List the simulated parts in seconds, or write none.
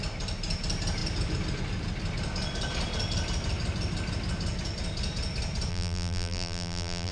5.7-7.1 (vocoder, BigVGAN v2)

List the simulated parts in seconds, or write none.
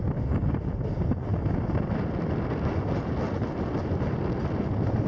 none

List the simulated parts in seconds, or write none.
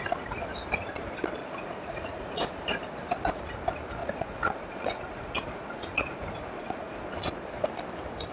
1.4-2.8 (vocoder, Vocos); 4.0-7.3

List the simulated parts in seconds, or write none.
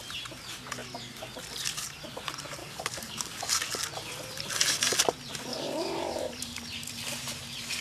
2.6-3.5 (codec, DAC); 5.5-6.6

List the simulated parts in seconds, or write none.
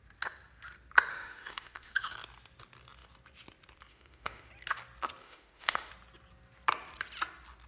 1.1-2.1 (autoencoder, DAC-VAE); 3.9-4.5; 5.2-5.9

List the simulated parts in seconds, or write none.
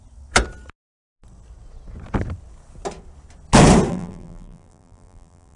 3.9-5.6 (vocoder, BigVGAN v2)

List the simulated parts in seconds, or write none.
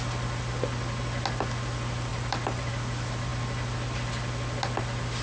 2.1-2.7 (vocoder, BigVGAN v2)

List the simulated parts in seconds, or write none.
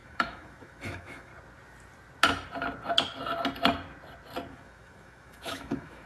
0.0-1.3 (autoencoder, DAC-VAE); 4.5-6.1